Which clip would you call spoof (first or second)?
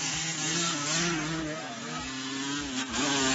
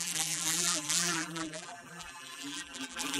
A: second